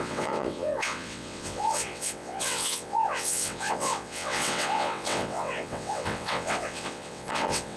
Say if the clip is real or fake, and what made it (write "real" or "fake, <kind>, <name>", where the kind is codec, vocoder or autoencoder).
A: fake, vocoder, WaveNeXt